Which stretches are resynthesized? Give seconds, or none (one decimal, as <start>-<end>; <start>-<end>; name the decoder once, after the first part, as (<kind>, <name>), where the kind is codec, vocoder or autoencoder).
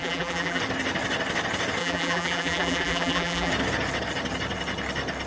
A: 0.0-0.6 (vocoder, BigVGAN v2); 1.8-3.5